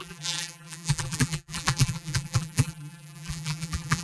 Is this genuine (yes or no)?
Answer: no